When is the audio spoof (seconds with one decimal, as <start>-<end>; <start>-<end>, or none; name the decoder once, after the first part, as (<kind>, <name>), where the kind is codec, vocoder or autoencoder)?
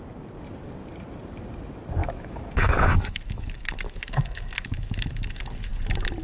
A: 2.0-5.7 (autoencoder, DAC-VAE)